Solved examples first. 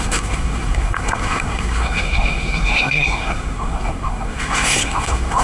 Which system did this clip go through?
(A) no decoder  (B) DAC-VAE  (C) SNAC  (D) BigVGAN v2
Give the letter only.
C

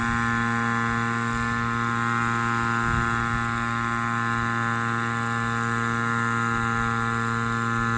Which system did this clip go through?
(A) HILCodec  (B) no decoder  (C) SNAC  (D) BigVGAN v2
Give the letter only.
B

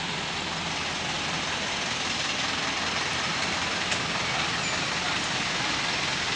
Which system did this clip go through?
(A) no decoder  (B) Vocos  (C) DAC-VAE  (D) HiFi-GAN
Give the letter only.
A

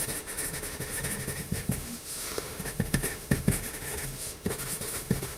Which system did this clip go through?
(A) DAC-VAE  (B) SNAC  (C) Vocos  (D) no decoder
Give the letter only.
A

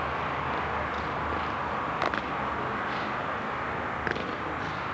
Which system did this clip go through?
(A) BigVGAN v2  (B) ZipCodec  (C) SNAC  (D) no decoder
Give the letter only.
D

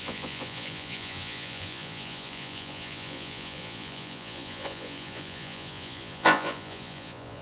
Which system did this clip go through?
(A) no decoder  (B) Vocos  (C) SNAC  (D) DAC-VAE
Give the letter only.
B